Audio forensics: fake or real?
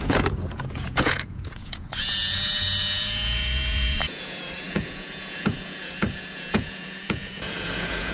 fake